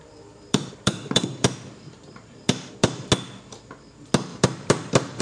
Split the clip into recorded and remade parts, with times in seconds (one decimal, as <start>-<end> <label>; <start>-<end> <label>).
0.0-3.1 remade; 3.1-4.3 recorded; 4.3-5.2 remade